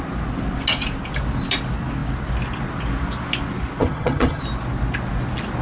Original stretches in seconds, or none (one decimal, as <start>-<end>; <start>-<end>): 0.0-3.8; 4.4-5.6